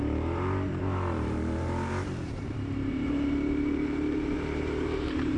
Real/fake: fake